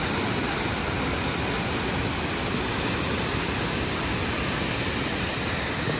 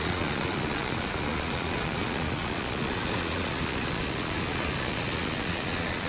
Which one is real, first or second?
first